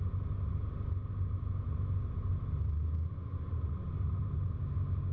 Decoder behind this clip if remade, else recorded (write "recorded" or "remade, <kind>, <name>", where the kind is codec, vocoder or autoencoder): recorded